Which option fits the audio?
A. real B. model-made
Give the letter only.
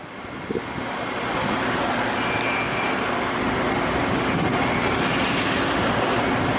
A